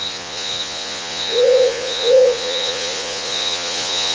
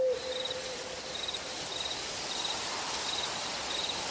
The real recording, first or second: second